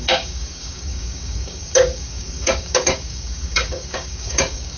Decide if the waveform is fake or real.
fake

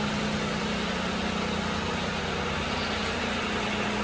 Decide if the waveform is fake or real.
real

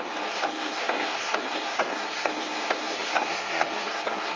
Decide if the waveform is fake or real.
fake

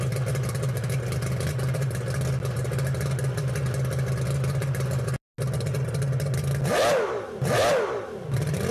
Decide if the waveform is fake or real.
real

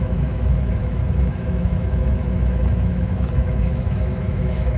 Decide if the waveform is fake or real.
fake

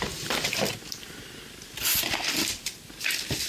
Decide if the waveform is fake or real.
real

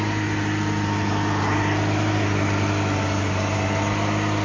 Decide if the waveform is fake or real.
real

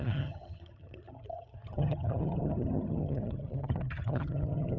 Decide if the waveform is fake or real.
fake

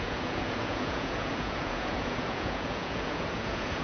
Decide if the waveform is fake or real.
fake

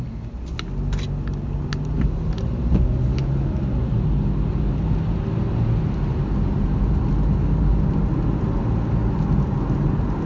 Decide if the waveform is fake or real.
real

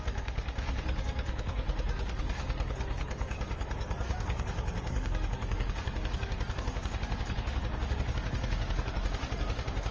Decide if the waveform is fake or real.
fake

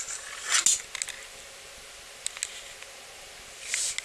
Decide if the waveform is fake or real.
real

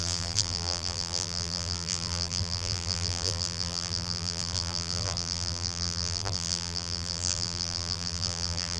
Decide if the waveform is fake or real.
fake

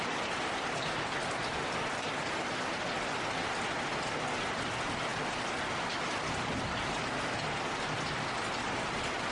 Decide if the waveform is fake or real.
real